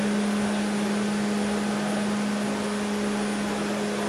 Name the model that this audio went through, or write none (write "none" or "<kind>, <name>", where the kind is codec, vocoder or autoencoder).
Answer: none